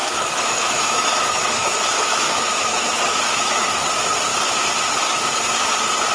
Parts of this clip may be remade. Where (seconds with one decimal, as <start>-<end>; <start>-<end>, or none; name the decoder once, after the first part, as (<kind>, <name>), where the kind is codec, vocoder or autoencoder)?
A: 0.0-3.7 (autoencoder, DAC-VAE)